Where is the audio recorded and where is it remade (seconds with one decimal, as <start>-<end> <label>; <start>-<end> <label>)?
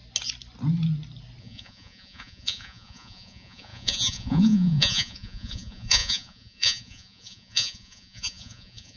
0.0-1.4 recorded; 1.4-9.0 remade